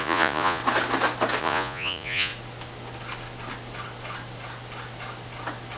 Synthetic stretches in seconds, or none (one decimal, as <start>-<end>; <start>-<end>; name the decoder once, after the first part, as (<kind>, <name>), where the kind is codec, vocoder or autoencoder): 0.0-0.6 (vocoder, Vocos); 1.4-2.3